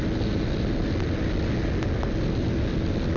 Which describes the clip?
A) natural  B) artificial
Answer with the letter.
A